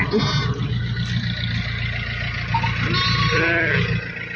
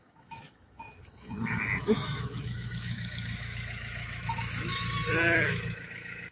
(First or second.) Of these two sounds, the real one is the first